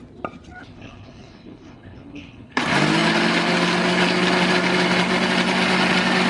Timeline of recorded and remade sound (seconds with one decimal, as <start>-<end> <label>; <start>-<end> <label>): 0.0-0.6 recorded; 0.6-2.6 remade; 2.6-6.3 recorded